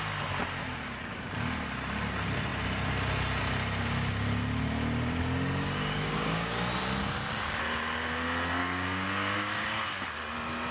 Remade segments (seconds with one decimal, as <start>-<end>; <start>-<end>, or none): 5.8-6.5; 8.6-9.7